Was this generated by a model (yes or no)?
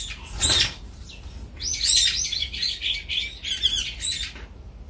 no